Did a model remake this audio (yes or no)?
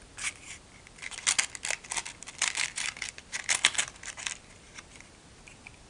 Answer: no